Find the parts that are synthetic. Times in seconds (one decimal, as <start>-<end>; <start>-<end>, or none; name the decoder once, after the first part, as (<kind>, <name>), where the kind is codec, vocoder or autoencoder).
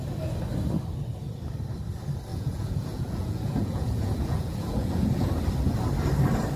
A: 2.3-5.3 (vocoder, Vocos)